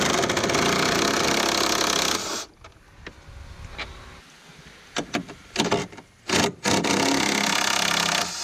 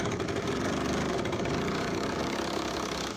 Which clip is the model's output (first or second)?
second